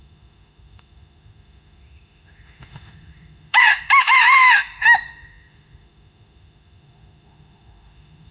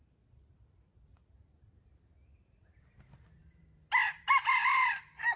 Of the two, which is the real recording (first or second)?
second